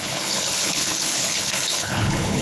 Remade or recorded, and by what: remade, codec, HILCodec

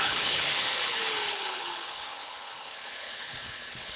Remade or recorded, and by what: remade, codec, HILCodec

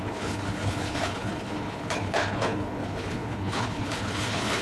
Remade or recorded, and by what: remade, codec, HILCodec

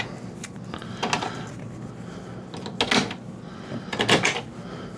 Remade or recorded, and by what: recorded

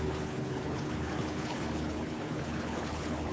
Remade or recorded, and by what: remade, codec, HILCodec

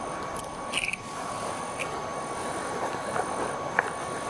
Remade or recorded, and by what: recorded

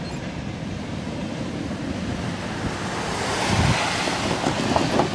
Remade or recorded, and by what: recorded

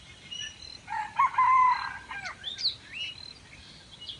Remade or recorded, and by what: recorded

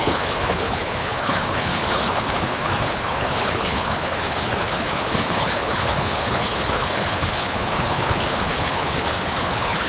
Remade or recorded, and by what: remade, codec, HILCodec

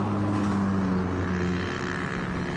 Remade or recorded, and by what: recorded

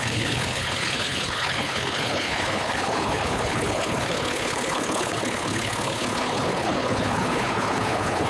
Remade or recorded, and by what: remade, codec, HILCodec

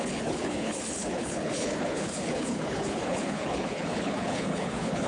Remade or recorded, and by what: remade, codec, HILCodec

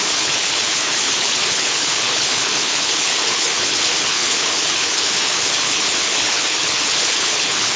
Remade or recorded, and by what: remade, codec, HILCodec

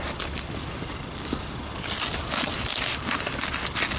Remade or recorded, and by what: recorded